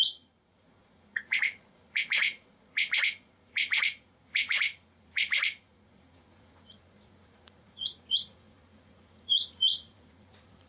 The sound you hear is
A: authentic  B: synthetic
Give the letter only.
B